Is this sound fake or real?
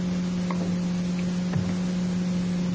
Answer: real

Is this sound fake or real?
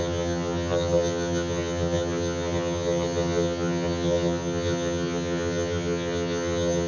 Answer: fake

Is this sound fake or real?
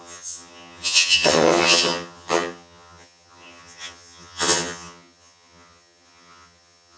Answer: fake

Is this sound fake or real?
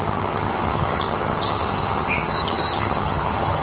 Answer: fake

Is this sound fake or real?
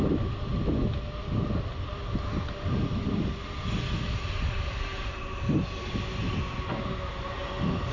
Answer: real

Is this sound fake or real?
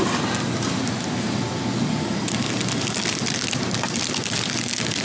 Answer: real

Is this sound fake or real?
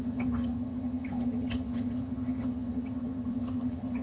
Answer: fake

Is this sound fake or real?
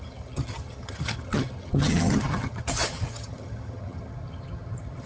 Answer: fake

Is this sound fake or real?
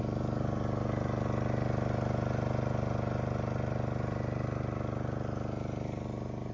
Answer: real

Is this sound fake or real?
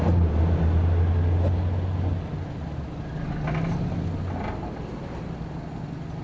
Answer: real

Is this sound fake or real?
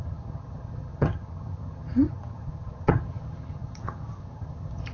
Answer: fake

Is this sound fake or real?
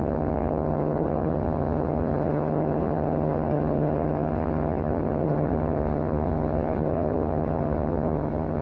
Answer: fake